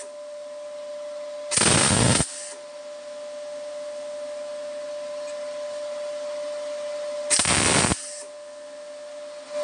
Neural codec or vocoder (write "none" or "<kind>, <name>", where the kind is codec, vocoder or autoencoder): none